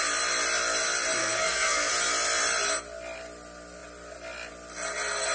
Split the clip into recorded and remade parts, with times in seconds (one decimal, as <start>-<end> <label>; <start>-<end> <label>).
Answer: 0.0-1.2 recorded; 1.2-1.9 remade; 1.9-5.3 recorded